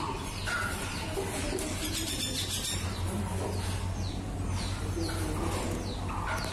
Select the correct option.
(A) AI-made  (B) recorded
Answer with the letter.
B